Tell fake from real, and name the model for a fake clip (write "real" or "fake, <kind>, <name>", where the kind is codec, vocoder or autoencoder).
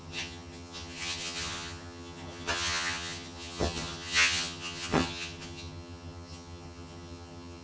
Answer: fake, vocoder, HiFi-GAN